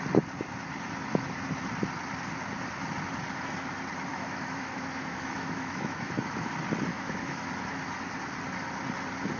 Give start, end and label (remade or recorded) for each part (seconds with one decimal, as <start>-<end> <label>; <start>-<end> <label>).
0.0-4.1 recorded; 4.1-6.5 remade; 6.5-6.9 recorded; 6.9-7.4 remade; 7.4-9.4 recorded